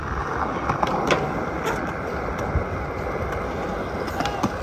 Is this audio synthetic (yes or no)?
no